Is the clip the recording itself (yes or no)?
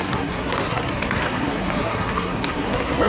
no